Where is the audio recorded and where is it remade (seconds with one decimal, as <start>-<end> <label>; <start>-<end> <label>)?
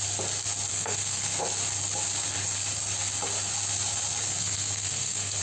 0.0-0.7 recorded; 0.7-1.4 remade; 1.4-4.4 recorded; 4.4-5.4 remade